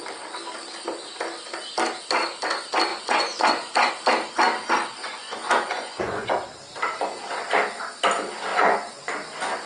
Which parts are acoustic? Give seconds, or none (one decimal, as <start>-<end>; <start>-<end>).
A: 0.0-2.9; 3.9-5.0; 6.3-8.5; 9.1-9.7